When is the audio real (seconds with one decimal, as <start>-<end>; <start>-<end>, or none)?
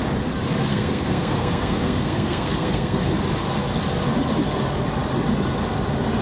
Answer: 0.0-0.7; 3.1-6.2